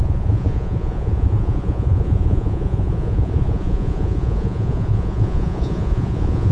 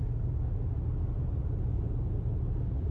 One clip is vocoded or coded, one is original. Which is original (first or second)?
second